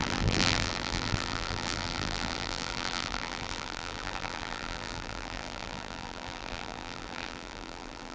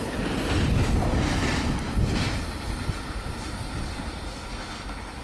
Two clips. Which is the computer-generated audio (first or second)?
first